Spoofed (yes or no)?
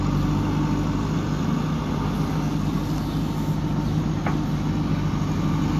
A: no